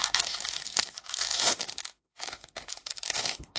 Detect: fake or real fake